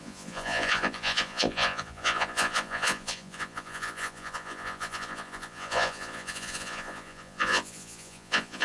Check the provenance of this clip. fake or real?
fake